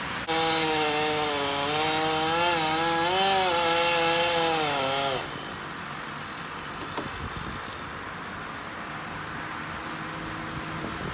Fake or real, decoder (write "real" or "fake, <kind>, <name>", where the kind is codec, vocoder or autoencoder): real